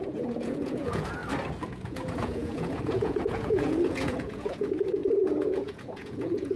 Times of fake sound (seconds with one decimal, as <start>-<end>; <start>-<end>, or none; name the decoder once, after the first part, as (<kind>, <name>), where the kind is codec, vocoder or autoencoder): 0.0-1.2 (vocoder, Vocos); 1.7-6.6